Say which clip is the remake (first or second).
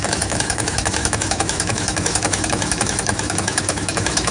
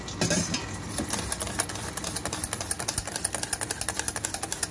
first